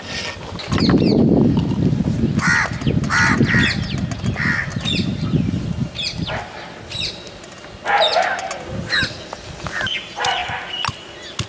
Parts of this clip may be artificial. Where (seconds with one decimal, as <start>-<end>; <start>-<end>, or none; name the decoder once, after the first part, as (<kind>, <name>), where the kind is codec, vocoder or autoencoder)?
none